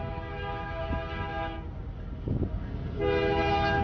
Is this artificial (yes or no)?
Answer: no